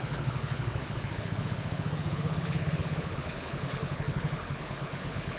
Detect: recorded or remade remade